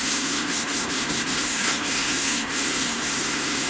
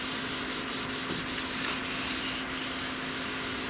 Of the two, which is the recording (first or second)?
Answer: second